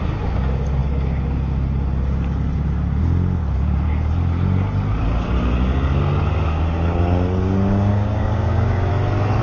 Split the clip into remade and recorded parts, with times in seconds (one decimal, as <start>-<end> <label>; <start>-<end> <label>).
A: 0.0-7.9 recorded; 7.9-8.9 remade; 8.9-9.4 recorded

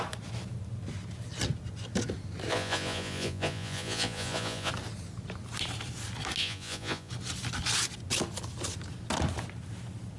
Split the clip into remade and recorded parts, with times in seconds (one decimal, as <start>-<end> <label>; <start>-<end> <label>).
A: 0.0-2.5 recorded; 2.5-4.7 remade; 4.7-6.4 recorded; 6.4-7.1 remade; 7.1-10.2 recorded